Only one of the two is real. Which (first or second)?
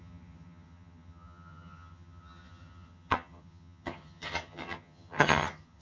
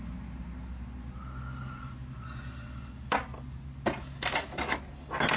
second